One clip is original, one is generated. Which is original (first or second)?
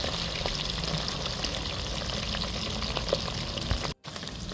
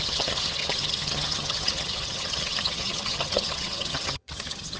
first